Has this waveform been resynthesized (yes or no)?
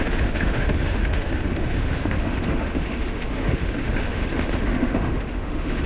yes